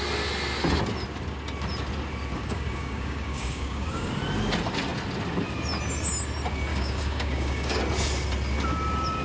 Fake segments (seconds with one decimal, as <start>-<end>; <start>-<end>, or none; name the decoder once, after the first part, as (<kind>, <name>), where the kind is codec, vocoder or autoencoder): 2.3-4.1 (codec, DAC); 6.7-7.8